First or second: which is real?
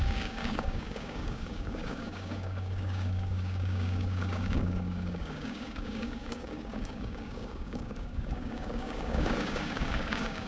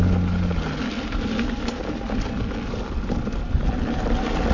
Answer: second